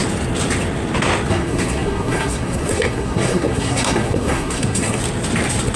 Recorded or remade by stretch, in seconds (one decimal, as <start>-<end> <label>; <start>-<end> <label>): 0.0-1.3 recorded; 1.3-5.0 remade; 5.0-5.8 recorded